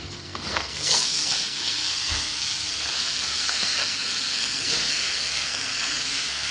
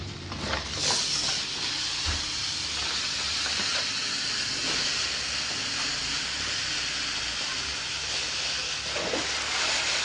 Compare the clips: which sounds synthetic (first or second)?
first